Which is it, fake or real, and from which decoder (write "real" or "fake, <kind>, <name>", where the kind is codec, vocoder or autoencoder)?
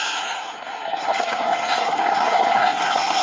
fake, codec, SNAC